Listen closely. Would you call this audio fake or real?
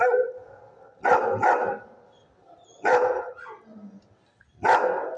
real